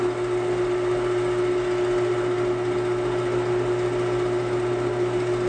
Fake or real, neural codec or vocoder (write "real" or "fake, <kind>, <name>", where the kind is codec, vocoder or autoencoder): real